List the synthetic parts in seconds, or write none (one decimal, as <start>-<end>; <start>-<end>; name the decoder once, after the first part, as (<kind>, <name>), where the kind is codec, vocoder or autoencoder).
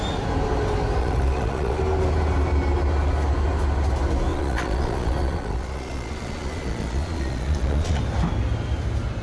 1.0-1.8 (vocoder, Vocos); 4.3-8.0